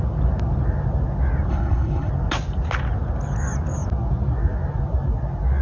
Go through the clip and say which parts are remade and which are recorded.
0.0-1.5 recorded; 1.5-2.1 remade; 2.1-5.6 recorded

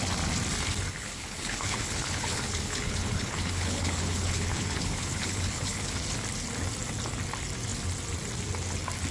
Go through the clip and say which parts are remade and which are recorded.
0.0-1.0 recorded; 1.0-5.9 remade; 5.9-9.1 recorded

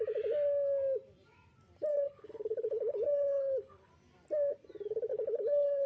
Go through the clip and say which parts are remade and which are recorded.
0.0-1.9 recorded; 1.9-3.9 remade; 3.9-5.1 recorded; 5.1-5.9 remade